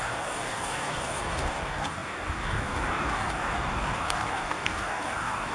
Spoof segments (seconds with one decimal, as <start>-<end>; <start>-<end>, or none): 0.0-5.5